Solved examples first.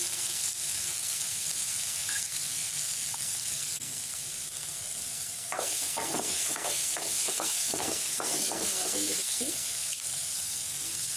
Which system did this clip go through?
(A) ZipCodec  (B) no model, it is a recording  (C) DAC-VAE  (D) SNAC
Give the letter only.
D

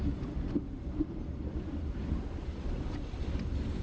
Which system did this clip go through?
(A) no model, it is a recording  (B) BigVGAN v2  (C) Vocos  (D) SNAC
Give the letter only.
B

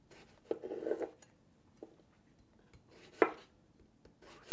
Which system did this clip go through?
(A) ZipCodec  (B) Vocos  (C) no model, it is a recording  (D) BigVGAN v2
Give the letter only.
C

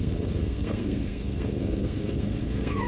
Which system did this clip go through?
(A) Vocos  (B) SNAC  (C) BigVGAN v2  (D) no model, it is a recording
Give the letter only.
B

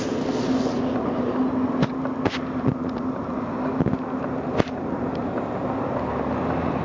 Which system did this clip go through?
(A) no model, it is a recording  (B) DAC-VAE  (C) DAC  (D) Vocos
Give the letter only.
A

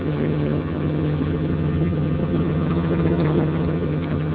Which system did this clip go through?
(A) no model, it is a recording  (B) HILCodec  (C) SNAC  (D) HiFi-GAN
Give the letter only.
D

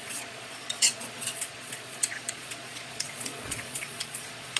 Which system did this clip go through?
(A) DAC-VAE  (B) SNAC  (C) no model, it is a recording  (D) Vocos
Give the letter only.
D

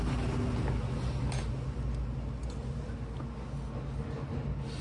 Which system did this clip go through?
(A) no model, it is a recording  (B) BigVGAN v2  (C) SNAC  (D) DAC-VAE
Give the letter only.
A